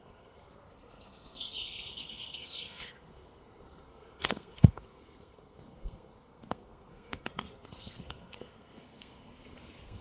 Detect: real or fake fake